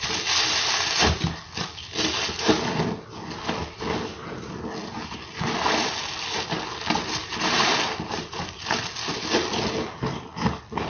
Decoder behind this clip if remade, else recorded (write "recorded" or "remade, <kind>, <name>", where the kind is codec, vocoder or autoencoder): recorded